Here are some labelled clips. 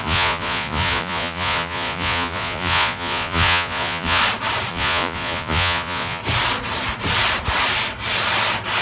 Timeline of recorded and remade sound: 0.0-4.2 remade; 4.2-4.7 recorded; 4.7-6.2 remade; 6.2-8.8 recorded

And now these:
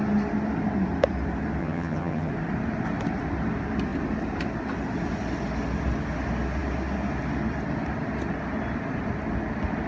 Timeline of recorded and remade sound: 0.0-1.6 recorded; 1.6-2.3 remade; 2.3-9.9 recorded

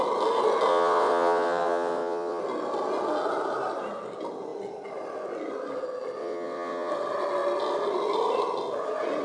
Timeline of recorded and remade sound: 0.0-0.7 recorded; 0.7-2.4 remade; 2.4-6.2 recorded; 6.2-6.9 remade; 6.9-9.2 recorded

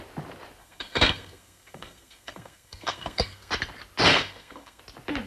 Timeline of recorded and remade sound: 0.0-0.6 recorded; 0.6-3.5 remade; 3.5-4.1 recorded; 4.1-4.8 remade; 4.8-5.3 recorded

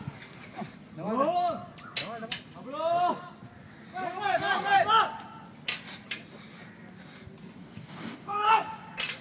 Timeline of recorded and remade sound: 0.0-7.6 recorded; 7.6-8.5 remade; 8.5-9.2 recorded

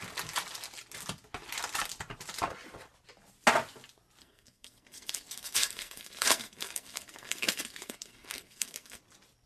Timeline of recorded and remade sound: 0.0-4.2 recorded; 4.2-9.0 remade; 9.0-9.5 recorded